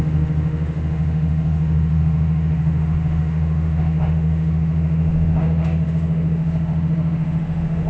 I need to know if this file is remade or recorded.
remade